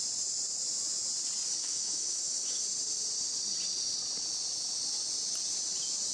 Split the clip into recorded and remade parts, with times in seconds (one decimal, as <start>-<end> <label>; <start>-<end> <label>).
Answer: 0.0-1.6 recorded; 1.6-2.6 remade; 2.6-6.1 recorded